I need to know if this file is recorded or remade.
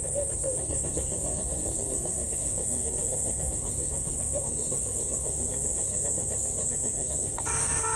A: remade